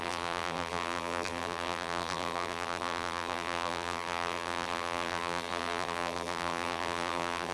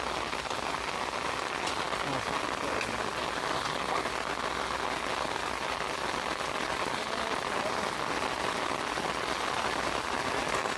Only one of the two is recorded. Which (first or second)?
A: second